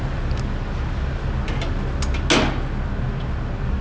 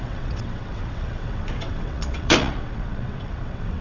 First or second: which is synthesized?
second